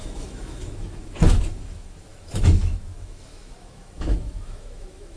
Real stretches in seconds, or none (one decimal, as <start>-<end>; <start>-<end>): none